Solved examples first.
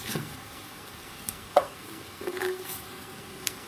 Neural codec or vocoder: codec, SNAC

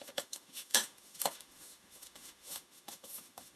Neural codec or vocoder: autoencoder, DAC-VAE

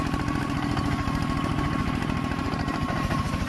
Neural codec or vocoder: vocoder, BigVGAN v2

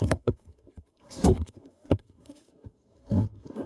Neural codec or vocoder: codec, SNAC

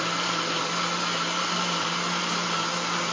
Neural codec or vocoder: none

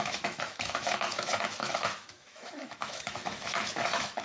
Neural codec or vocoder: autoencoder, DAC-VAE